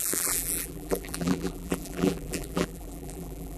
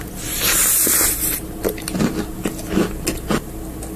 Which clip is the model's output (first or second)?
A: first